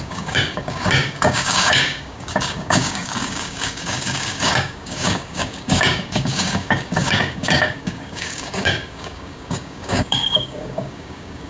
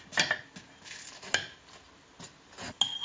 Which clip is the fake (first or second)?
first